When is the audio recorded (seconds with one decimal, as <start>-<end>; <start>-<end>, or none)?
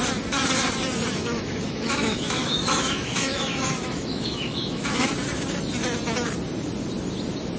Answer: 0.0-1.2; 5.1-7.6